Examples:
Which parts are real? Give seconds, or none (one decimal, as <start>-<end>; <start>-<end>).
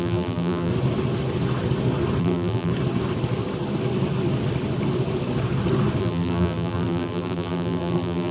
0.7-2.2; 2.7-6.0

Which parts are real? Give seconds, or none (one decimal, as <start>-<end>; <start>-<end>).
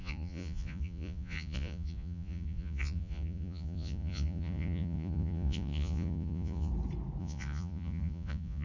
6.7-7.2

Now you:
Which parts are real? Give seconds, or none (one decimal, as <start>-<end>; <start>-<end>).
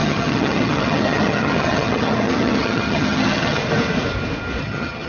3.6-4.6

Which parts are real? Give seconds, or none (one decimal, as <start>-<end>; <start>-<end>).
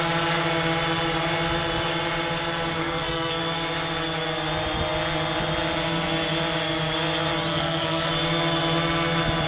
0.0-2.8; 3.4-7.5; 8.1-9.5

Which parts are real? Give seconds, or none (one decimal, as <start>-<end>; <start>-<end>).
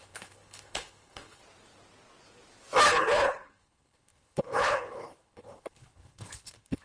1.4-2.9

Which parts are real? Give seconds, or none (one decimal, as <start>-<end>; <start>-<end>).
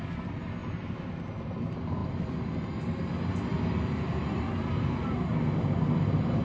0.0-0.6; 1.1-6.4